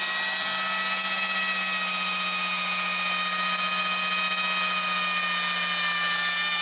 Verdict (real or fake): real